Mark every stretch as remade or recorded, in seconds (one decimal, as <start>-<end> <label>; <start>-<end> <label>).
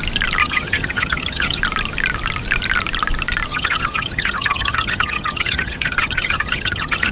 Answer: 0.0-0.4 recorded; 0.4-1.6 remade; 1.6-3.5 recorded; 3.5-7.1 remade